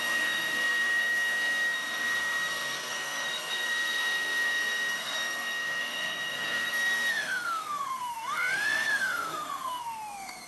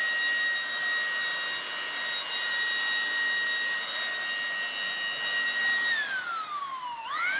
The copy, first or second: first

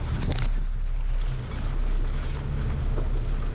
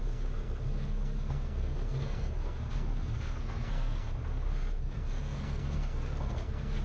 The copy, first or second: second